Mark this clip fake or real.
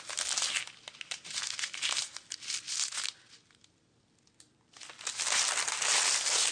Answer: real